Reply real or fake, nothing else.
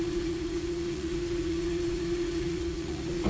fake